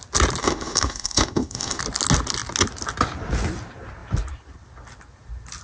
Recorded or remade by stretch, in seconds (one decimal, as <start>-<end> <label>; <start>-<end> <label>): 0.0-0.4 recorded; 0.4-1.8 remade; 1.8-5.6 recorded